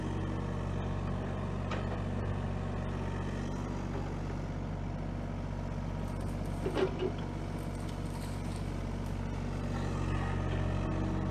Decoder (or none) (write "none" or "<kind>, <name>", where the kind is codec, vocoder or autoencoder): none